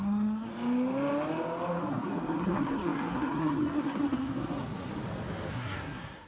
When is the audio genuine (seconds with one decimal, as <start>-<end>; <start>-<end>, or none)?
0.5-1.9; 4.9-5.5

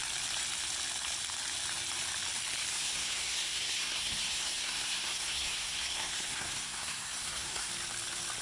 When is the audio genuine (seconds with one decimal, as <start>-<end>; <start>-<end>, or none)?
0.0-2.7; 7.7-8.4

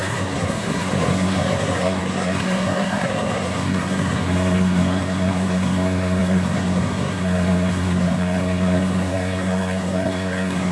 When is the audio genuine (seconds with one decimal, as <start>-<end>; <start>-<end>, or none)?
none

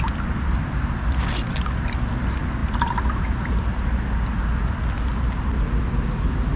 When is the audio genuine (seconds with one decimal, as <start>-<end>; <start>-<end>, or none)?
0.0-6.6

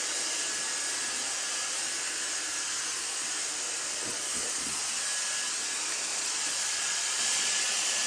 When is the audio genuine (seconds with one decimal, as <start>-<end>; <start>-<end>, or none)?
0.0-4.1; 4.8-6.1; 7.6-8.1

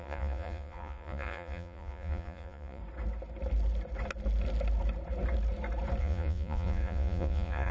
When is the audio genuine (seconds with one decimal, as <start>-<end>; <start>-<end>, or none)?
2.8-6.0

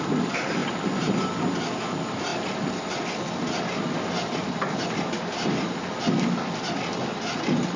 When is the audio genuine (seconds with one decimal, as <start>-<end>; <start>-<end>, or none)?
0.0-7.8

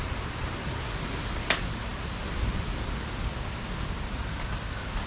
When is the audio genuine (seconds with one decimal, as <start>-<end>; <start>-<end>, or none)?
0.0-5.1